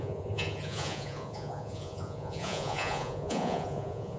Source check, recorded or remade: remade